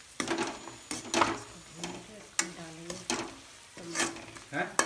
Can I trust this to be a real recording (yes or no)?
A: yes